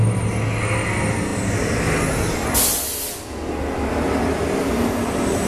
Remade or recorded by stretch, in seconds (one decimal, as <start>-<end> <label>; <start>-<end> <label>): 0.0-5.5 recorded